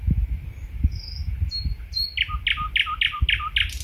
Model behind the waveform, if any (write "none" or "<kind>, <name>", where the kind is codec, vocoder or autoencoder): none